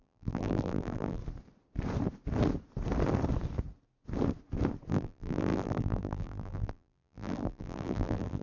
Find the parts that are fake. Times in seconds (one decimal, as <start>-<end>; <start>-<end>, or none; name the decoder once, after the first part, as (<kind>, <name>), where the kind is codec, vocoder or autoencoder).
0.0-1.2 (vocoder, BigVGAN v2); 4.9-8.4